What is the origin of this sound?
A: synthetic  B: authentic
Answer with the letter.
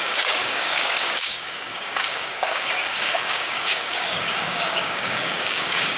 A